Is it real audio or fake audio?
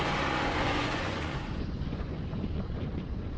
fake